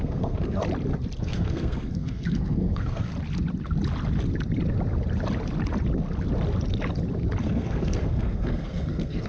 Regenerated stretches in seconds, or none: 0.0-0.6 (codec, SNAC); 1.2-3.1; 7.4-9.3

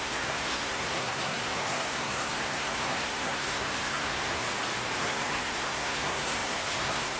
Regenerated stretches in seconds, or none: 0.0-4.4 (codec, SNAC); 5.0-7.2